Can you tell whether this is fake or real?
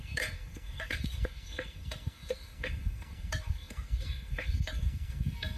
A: fake